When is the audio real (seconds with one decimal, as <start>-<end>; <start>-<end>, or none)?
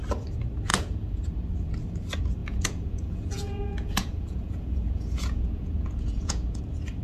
0.0-0.7; 1.2-2.4; 6.6-7.0